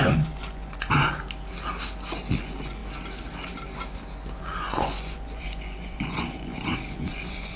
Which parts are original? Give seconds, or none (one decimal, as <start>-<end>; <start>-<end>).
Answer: 1.2-2.4; 2.8-4.4